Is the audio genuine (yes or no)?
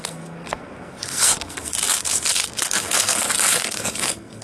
no